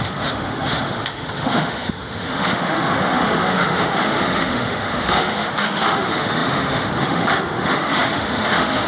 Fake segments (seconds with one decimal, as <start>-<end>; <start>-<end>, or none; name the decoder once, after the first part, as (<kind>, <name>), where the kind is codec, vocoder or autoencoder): 0.0-8.9 (autoencoder, DAC-VAE)